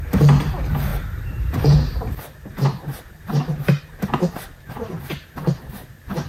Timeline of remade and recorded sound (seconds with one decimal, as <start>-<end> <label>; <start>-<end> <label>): 0.0-0.9 recorded; 0.9-4.7 remade; 4.7-5.4 recorded; 5.4-6.3 remade